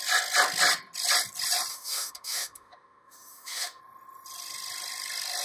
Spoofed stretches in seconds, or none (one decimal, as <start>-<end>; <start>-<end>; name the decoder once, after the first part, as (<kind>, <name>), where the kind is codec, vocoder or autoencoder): 1.7-3.8 (autoencoder, DAC-VAE)